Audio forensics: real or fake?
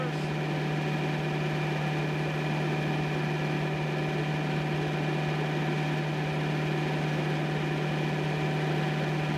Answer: real